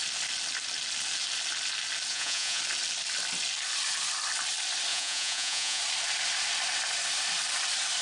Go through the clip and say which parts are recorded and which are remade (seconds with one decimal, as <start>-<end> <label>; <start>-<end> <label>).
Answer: 0.0-2.1 recorded; 2.1-2.6 remade; 2.6-4.9 recorded; 4.9-5.8 remade; 5.8-8.0 recorded